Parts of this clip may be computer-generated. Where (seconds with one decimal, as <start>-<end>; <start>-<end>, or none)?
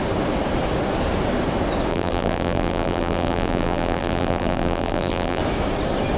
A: 1.9-5.4